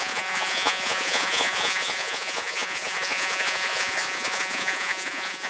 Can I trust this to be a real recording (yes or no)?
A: no